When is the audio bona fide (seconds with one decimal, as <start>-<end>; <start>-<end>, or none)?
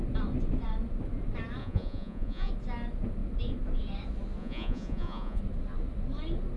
0.0-1.6; 2.5-4.4; 5.4-6.6